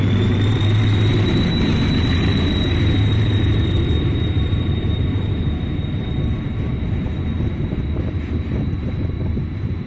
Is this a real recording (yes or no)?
no